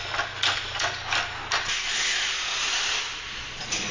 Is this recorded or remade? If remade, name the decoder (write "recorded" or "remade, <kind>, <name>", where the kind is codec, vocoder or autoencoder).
recorded